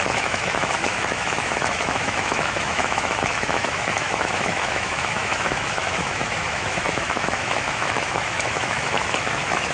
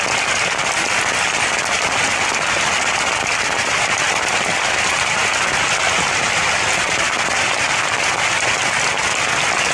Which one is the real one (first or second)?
second